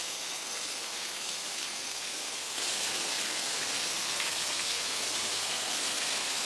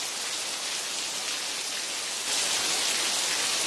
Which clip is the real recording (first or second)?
second